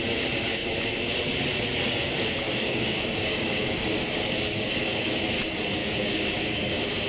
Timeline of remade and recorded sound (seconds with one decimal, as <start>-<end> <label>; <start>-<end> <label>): 0.0-1.5 recorded; 1.5-5.2 remade; 5.2-5.8 recorded; 5.8-7.1 remade